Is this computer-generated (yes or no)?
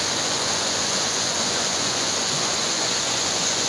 yes